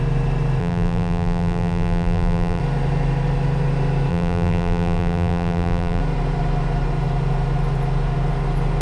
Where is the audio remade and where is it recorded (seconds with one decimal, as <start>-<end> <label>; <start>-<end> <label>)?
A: 0.0-0.6 recorded; 0.6-2.6 remade; 2.6-4.1 recorded; 4.1-6.0 remade; 6.0-8.8 recorded